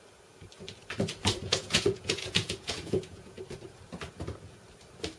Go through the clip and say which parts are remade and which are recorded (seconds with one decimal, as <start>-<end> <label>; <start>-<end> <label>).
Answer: 0.0-1.4 recorded; 1.4-3.4 remade; 3.4-5.2 recorded